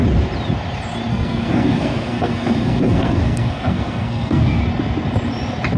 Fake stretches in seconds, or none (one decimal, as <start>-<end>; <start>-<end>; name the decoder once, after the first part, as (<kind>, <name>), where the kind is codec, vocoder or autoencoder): 1.1-4.6 (codec, SNAC)